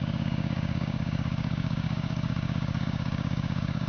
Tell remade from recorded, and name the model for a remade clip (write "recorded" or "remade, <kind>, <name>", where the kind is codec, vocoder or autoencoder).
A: remade, codec, DAC